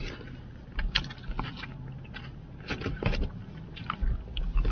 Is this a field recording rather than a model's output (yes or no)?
yes